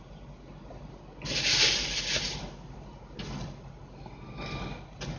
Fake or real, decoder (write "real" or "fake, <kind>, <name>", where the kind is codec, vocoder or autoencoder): real